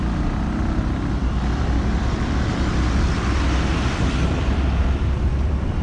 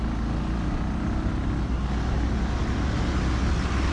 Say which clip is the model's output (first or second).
first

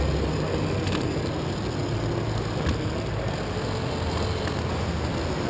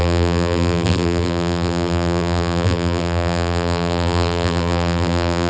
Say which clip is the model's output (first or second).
second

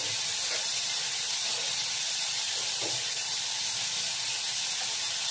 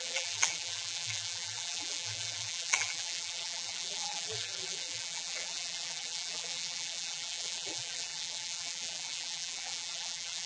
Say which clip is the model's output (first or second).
second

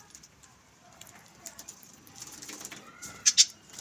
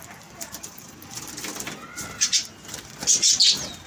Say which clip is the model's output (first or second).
first